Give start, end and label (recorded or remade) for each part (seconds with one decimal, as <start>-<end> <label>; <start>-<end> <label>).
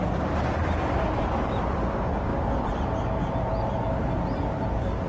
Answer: 0.0-5.1 recorded